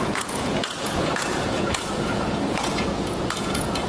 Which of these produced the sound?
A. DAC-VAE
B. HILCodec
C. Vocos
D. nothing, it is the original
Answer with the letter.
C